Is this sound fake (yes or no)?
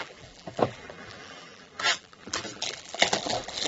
yes